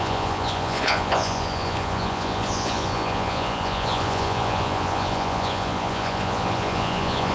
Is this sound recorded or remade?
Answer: remade